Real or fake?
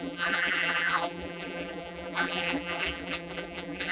fake